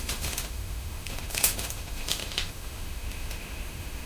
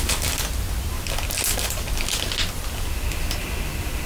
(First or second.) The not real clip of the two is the first